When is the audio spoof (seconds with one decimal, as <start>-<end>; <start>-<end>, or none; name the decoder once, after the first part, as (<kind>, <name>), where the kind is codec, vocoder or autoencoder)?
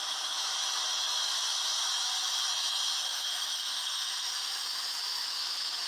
0.0-5.9 (autoencoder, DAC-VAE)